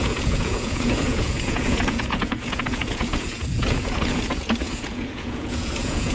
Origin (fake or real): fake